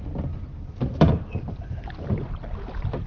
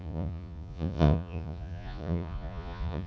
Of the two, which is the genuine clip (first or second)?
first